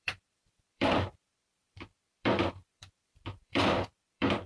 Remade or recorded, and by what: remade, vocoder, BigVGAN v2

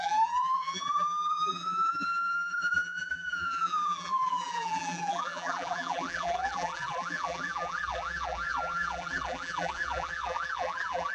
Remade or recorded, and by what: remade, vocoder, BigVGAN v2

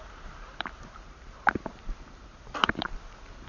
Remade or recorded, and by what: remade, vocoder, BigVGAN v2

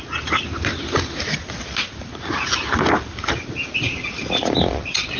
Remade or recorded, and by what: recorded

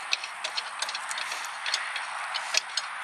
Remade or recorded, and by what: recorded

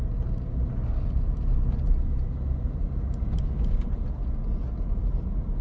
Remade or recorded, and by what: remade, vocoder, BigVGAN v2